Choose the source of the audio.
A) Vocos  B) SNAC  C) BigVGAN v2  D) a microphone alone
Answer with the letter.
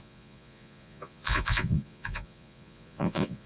A